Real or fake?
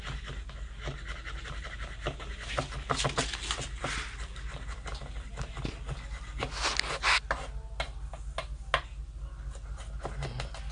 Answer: real